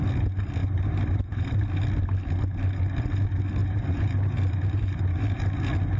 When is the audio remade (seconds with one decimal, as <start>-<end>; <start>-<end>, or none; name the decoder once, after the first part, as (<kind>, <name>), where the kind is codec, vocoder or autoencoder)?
0.6-1.6 (vocoder, BigVGAN v2); 3.6-5.4